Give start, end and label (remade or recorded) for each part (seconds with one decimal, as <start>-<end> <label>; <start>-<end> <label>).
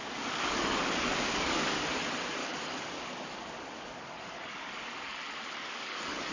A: 0.0-1.7 remade; 1.7-2.4 recorded; 2.4-6.3 remade